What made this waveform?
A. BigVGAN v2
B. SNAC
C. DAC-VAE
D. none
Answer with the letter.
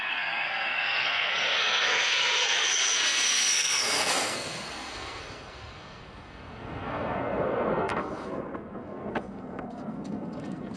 B